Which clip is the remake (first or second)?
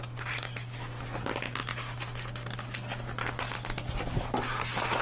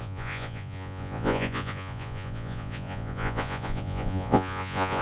second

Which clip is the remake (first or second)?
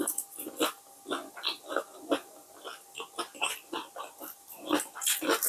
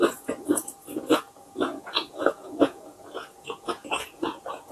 second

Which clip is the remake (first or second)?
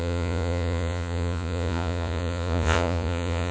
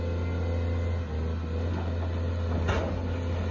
first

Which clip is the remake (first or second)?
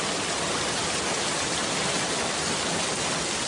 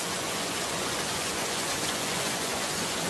second